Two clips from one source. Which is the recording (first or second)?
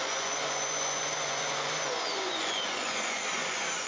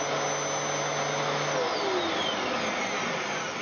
second